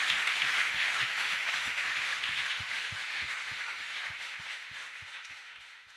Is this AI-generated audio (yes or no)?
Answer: yes